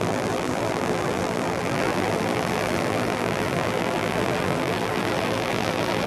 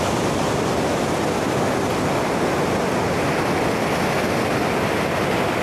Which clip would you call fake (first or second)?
first